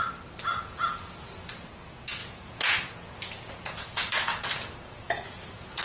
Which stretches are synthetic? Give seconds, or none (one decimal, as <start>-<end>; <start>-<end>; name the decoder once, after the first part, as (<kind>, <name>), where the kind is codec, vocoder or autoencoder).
0.5-1.1 (vocoder, Vocos); 2.2-5.8